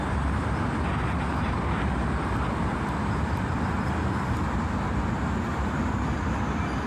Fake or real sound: real